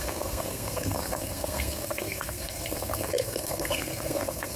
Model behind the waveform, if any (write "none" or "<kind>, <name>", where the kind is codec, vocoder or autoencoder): codec, SNAC